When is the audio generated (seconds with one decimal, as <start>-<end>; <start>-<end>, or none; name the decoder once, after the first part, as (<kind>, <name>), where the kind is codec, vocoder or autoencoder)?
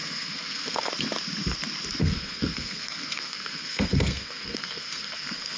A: 0.0-0.9 (codec, SNAC); 2.0-5.6